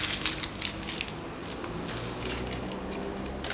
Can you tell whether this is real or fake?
real